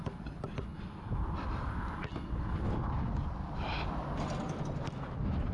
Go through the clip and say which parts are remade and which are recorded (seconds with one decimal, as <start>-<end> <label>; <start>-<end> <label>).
0.0-5.5 recorded